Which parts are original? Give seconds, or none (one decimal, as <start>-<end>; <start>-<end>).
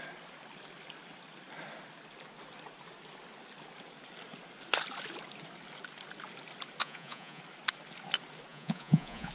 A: 0.0-6.8; 7.4-8.5